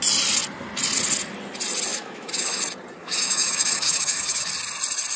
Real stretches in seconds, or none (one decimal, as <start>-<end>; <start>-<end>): 0.0-1.9; 2.6-3.0; 4.5-5.2